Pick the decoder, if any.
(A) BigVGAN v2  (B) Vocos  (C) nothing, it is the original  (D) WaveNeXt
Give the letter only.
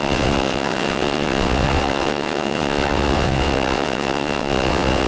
D